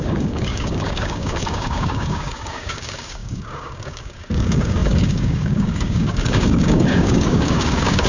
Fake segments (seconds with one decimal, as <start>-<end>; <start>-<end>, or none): 0.0-8.1